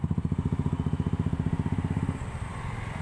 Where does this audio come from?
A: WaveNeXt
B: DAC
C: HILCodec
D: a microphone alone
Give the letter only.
D